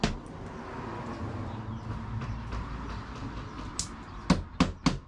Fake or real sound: real